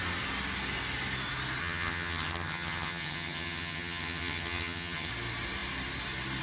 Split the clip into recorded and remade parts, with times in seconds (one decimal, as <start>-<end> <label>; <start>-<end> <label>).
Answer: 0.0-1.6 recorded; 1.6-5.1 remade; 5.1-6.4 recorded